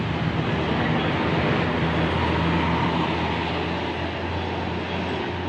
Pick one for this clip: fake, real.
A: real